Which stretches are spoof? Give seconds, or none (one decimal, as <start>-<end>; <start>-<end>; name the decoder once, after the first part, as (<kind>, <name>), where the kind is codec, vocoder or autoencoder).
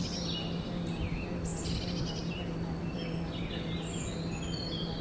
none